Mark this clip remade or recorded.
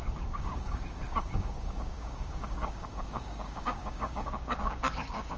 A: remade